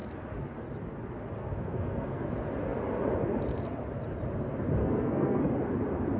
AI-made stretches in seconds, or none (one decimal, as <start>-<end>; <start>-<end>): 1.4-2.3; 4.8-5.5